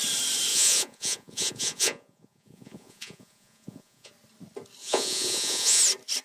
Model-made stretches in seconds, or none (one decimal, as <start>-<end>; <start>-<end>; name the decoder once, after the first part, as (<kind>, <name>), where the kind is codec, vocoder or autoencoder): 0.5-4.1 (vocoder, Vocos); 4.8-5.8